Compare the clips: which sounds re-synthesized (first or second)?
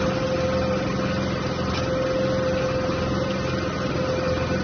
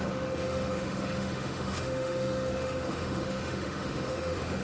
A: second